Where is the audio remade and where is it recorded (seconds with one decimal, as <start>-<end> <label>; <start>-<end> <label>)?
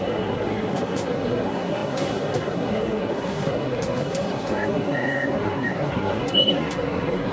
0.0-7.3 remade